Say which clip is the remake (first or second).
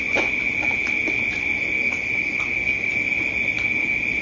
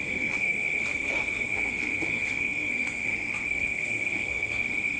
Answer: second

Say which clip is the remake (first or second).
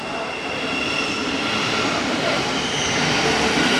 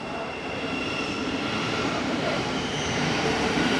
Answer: second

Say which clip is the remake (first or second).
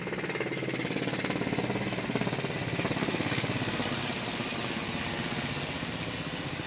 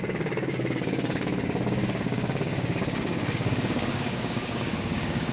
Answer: second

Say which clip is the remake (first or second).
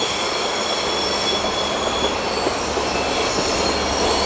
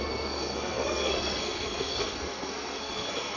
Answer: second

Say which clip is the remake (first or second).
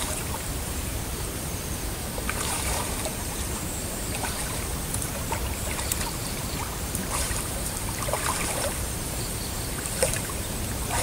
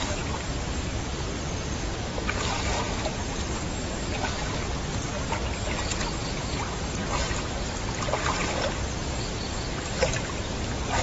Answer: first